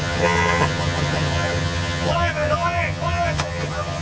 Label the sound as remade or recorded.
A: remade